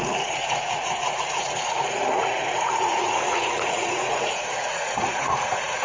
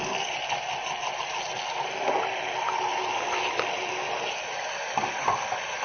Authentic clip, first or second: second